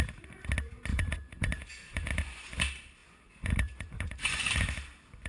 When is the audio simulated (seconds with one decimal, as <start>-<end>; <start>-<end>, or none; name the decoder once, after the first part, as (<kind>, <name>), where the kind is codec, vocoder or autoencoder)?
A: 0.9-2.6 (vocoder, Vocos); 3.0-4.5